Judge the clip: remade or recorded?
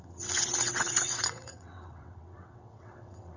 remade